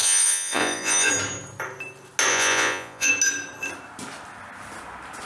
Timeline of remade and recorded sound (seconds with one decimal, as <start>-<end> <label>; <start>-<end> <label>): 0.0-1.1 remade; 1.1-2.3 recorded; 2.3-3.1 remade; 3.1-5.3 recorded